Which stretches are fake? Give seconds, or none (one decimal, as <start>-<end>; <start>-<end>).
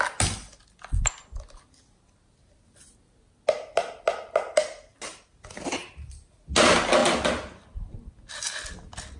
none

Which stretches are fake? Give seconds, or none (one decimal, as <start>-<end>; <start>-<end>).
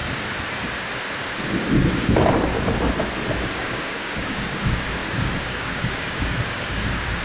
3.6-7.2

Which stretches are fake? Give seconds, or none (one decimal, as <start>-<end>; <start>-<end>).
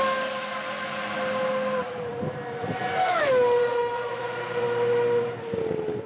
3.6-4.1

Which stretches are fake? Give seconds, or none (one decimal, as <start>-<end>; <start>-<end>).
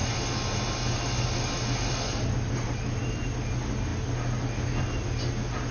none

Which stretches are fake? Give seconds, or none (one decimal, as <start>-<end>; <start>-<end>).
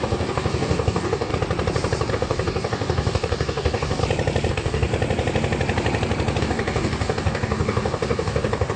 0.0-1.3; 2.1-4.0; 4.5-4.9; 6.4-8.8